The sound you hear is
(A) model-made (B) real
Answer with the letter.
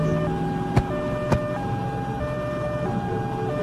B